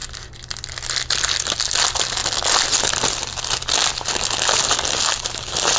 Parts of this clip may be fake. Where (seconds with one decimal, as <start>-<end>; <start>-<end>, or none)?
none